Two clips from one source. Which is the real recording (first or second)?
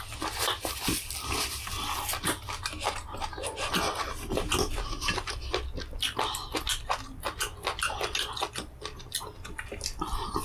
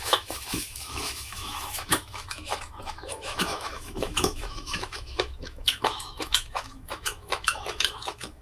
first